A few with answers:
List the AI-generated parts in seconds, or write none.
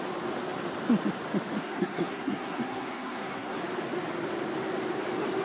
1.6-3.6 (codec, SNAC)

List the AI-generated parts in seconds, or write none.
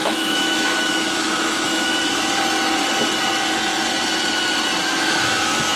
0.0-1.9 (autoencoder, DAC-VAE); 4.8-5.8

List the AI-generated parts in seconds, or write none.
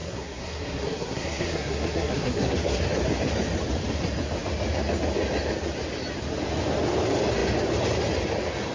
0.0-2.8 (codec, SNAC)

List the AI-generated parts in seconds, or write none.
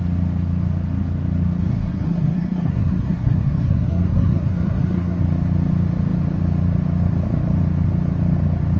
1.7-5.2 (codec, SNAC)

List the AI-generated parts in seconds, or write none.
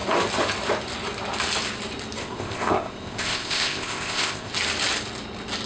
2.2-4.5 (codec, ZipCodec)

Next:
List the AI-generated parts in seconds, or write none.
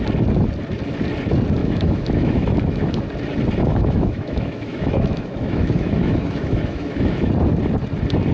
1.6-3.0 (autoencoder, DAC-VAE); 3.6-7.3